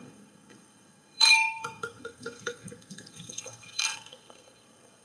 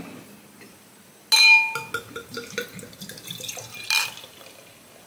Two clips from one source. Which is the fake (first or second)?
first